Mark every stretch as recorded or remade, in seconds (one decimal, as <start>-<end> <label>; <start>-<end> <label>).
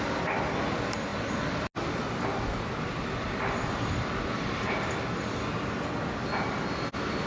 0.0-7.3 recorded